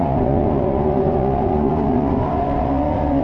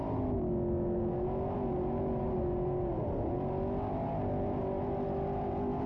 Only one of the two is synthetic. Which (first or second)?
first